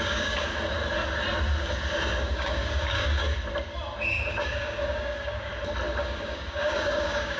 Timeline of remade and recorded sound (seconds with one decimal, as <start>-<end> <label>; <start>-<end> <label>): 0.0-0.5 remade; 0.5-2.2 recorded; 2.2-3.2 remade; 3.2-4.3 recorded; 4.3-5.5 remade; 5.5-6.0 recorded; 6.0-7.4 remade